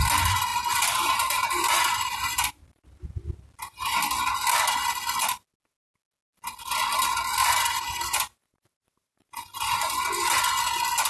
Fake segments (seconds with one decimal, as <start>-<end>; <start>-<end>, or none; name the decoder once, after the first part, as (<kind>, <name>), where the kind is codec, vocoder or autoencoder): 0.5-4.0 (vocoder, BigVGAN v2); 7.4-10.4